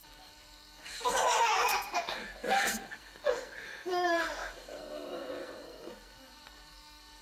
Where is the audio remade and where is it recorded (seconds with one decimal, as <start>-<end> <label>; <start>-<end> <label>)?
0.0-7.2 remade